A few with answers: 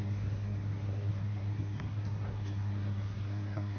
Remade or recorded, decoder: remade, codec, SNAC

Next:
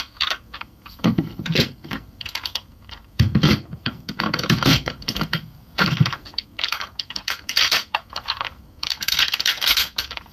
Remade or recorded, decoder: remade, codec, SNAC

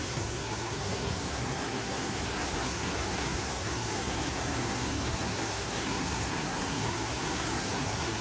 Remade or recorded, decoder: remade, codec, SNAC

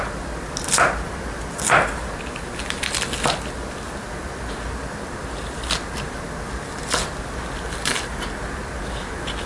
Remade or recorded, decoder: recorded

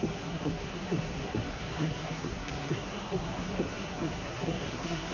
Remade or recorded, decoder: remade, codec, SNAC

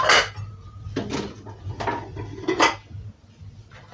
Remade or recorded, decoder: recorded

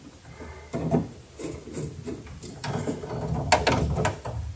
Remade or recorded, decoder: recorded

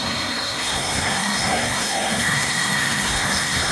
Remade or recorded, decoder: remade, codec, SNAC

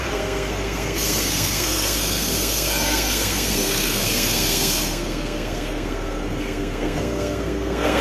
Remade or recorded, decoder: remade, codec, SNAC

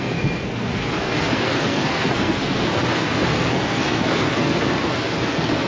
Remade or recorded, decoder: remade, codec, SNAC